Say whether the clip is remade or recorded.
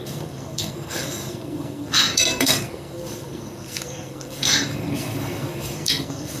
remade